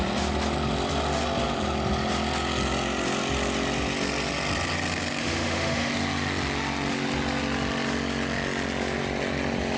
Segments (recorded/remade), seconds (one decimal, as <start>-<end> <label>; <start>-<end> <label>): 0.0-5.2 recorded; 5.2-5.9 remade; 5.9-9.8 recorded